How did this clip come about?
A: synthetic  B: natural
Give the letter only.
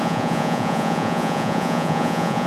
A